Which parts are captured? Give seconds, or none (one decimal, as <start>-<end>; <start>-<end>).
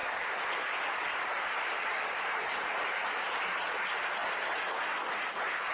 0.0-5.7